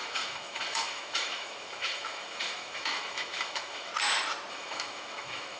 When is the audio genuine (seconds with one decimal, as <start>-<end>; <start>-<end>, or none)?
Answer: 3.9-4.5